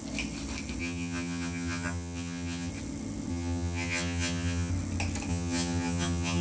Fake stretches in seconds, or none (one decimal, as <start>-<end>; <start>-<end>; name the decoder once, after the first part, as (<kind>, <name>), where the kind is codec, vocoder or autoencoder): 0.8-2.7 (vocoder, HiFi-GAN); 3.3-4.7; 5.3-6.4